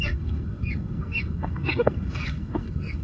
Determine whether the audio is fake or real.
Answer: fake